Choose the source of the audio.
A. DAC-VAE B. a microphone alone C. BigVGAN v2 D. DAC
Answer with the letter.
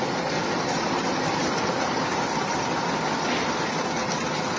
B